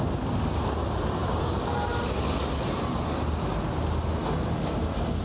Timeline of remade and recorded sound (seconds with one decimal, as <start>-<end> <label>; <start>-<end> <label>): 0.0-5.2 recorded